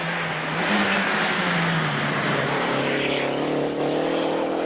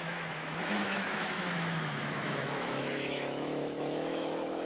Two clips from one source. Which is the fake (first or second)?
second